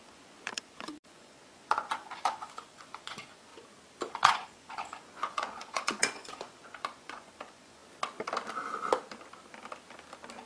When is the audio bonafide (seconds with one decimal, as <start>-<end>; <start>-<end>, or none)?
3.5-4.1; 7.8-10.5